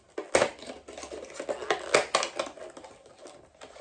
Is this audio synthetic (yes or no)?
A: no